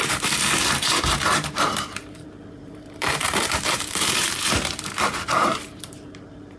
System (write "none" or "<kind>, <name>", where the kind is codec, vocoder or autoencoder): vocoder, BigVGAN v2